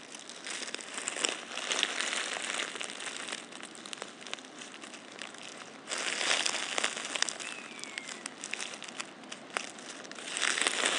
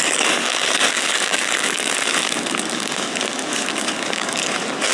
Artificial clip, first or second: second